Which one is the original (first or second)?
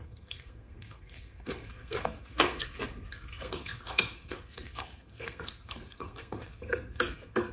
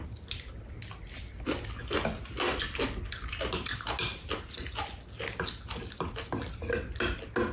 second